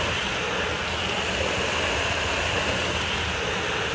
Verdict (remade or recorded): recorded